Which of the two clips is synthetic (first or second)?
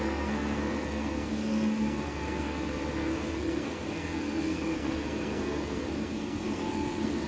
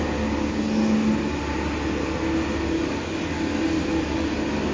first